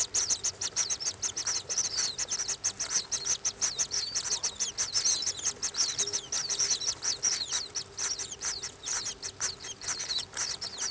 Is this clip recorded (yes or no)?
yes